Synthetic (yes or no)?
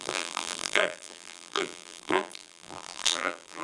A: yes